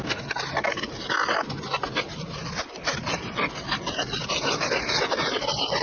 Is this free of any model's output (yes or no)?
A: yes